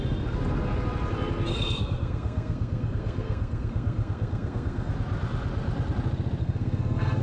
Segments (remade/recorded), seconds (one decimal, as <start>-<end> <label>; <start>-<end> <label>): 0.0-1.5 recorded; 1.5-4.9 remade; 4.9-6.4 recorded; 6.4-7.2 remade